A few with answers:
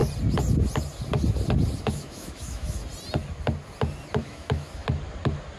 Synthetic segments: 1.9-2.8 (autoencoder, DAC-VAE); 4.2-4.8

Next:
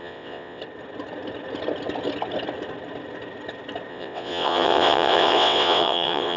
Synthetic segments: 0.0-0.6 (vocoder, WaveNeXt); 3.9-6.4

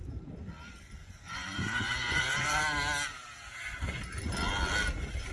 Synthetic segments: 1.0-2.6 (vocoder, Vocos)

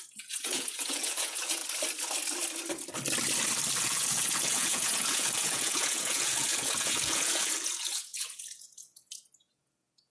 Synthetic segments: 0.0-1.6 (vocoder, Vocos); 3.8-10.1